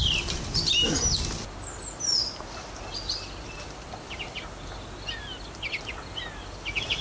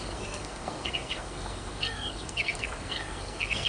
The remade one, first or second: second